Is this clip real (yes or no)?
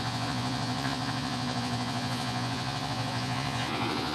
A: no